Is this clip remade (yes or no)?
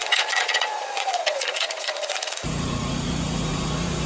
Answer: yes